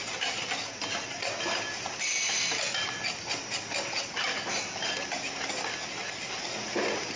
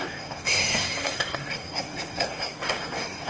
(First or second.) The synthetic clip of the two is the second